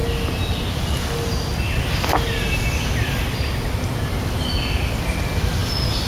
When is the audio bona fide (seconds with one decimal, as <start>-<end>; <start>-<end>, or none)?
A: 0.0-6.1